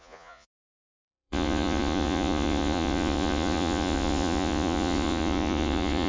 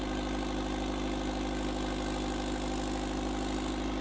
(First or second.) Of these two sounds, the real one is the second